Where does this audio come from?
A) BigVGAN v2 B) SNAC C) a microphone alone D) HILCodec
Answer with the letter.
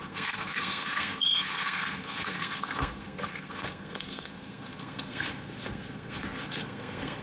B